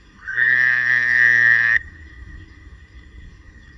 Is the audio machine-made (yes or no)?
yes